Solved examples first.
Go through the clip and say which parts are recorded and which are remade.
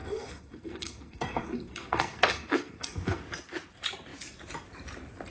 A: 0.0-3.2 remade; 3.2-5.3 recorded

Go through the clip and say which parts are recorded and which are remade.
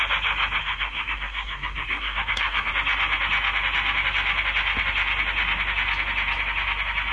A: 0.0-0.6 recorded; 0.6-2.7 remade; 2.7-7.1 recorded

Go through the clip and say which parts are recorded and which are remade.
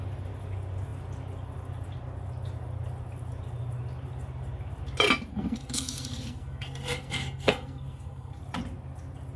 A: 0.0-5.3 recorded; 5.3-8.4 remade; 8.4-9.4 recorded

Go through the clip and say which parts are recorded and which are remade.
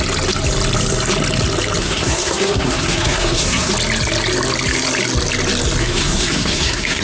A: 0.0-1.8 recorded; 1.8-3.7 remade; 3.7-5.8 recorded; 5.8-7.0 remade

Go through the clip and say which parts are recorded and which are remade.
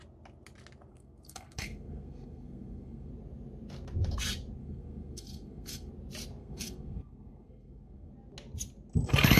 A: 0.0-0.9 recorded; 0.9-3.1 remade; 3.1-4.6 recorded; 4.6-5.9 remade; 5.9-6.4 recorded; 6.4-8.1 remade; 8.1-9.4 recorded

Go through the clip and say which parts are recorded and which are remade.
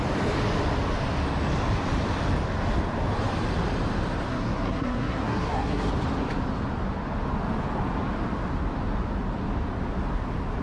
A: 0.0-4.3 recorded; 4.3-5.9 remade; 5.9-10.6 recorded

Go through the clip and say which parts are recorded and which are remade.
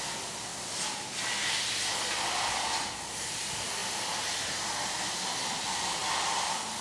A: 0.0-6.8 recorded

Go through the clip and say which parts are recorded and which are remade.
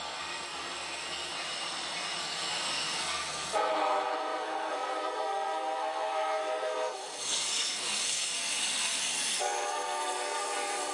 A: 0.0-1.3 remade; 1.3-2.2 recorded; 2.2-10.9 remade